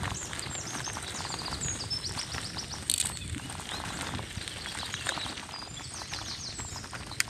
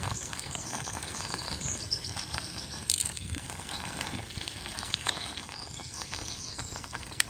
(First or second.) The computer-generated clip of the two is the second